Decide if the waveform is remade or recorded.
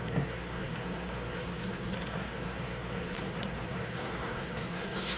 remade